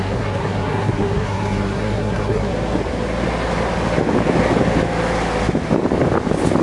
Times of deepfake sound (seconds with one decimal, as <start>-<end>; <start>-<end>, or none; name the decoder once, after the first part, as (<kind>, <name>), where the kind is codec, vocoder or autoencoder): 0.0-2.5 (codec, SNAC)